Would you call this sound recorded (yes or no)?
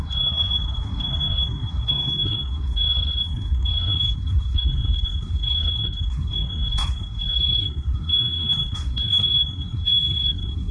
no